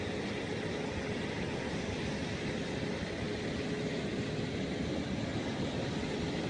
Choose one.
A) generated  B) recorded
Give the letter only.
B